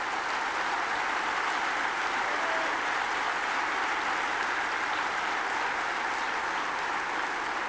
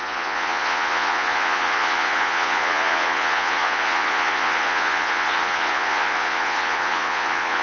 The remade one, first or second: second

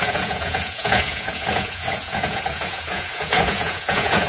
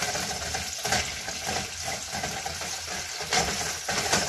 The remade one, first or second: first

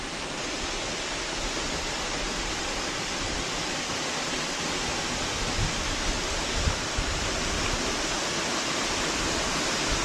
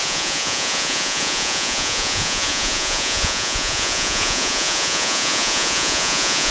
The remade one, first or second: second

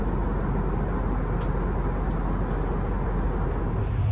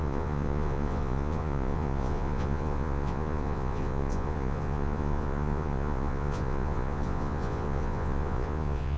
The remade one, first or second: second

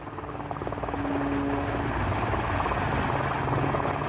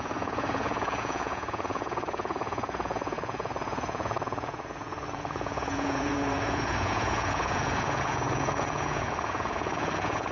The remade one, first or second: second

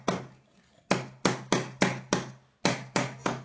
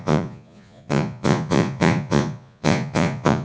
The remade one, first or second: second